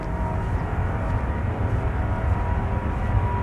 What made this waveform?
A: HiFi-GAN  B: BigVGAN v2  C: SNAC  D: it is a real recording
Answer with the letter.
D